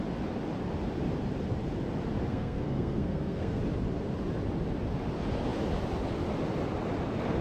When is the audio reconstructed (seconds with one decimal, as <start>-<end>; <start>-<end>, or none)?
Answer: 2.3-3.6